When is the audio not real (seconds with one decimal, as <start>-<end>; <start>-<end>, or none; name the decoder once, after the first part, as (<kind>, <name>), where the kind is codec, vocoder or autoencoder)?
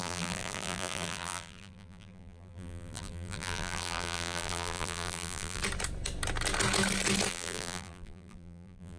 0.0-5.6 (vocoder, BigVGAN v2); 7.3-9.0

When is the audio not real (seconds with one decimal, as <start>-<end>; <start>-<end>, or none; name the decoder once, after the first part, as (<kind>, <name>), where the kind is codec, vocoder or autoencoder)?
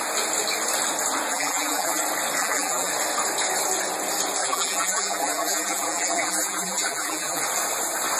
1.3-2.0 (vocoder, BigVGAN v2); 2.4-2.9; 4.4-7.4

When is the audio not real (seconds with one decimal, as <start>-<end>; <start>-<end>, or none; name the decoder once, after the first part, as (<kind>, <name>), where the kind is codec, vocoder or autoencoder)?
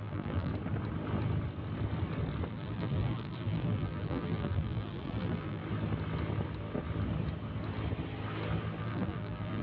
0.0-0.5 (vocoder, BigVGAN v2); 2.5-5.6; 8.8-9.6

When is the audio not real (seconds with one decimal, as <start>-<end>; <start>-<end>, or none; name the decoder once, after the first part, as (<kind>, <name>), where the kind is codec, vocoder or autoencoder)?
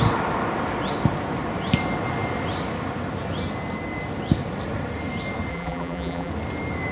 5.5-6.3 (vocoder, BigVGAN v2)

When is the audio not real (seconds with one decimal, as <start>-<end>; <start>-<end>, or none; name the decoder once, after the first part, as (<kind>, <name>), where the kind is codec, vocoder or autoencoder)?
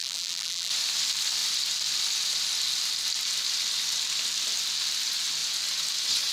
0.0-0.7 (vocoder, BigVGAN v2)